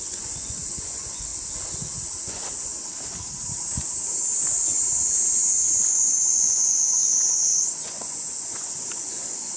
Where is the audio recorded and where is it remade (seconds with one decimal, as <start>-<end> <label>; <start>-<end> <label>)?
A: 0.0-1.3 remade; 1.3-2.2 recorded; 2.2-2.7 remade; 2.7-5.8 recorded; 5.8-9.6 remade